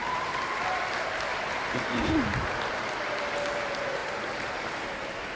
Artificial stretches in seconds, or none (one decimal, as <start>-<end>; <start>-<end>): none